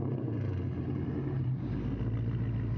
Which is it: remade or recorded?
recorded